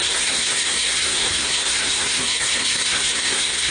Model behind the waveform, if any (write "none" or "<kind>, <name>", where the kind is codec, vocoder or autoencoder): codec, SNAC